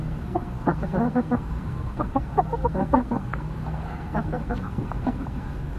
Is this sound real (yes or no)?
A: no